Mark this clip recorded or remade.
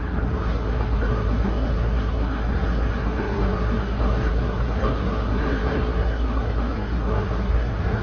remade